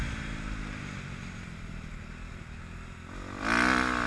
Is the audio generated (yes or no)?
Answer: no